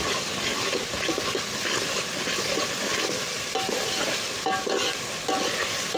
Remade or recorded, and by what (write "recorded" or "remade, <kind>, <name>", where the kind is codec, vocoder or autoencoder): recorded